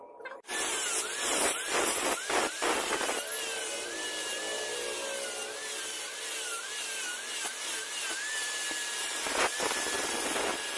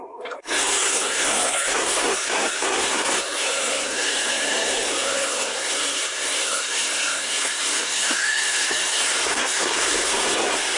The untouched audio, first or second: first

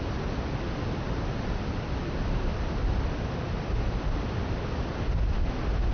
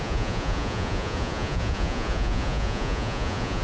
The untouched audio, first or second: first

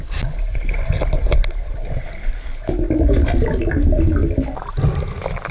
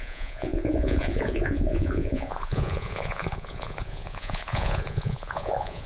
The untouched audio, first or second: first